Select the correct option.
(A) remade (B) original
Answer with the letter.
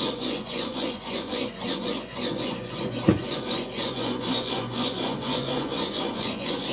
A